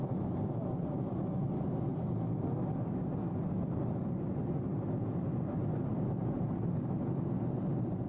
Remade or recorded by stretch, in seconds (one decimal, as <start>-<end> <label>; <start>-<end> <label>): 0.0-1.9 recorded; 1.9-2.4 remade; 2.4-8.1 recorded